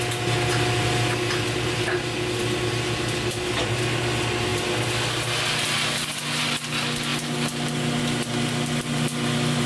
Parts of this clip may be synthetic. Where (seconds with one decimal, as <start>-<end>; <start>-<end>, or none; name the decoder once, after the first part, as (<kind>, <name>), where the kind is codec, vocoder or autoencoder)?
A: none